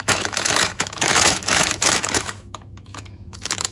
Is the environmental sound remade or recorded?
remade